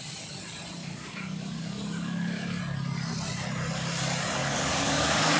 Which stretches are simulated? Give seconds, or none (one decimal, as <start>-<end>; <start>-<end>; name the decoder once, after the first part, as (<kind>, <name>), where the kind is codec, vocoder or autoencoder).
0.8-2.6 (codec, DAC); 4.4-5.4